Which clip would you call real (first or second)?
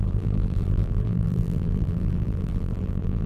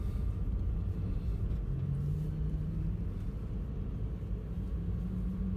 second